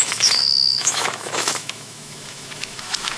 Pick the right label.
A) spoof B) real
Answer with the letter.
A